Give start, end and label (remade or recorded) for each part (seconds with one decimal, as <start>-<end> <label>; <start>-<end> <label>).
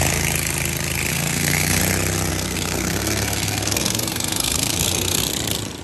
0.0-1.1 recorded; 1.1-1.8 remade; 1.8-2.3 recorded; 2.3-5.2 remade; 5.2-5.8 recorded